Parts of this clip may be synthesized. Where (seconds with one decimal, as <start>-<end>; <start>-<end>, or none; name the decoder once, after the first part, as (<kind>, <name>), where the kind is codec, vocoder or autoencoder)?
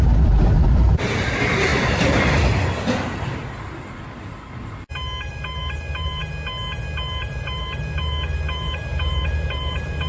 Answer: 0.0-1.7 (vocoder, BigVGAN v2); 5.3-6.2; 7.2-10.1